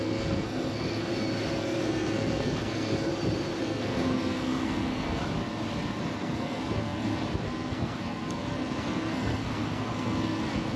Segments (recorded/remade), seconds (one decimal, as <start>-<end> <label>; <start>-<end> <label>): 0.0-1.1 remade; 1.1-1.6 recorded; 1.6-3.1 remade; 3.1-3.6 recorded; 3.6-5.2 remade; 5.2-6.0 recorded; 6.0-10.8 remade